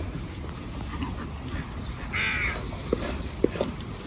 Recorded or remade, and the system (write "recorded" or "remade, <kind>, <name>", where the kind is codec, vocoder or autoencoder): recorded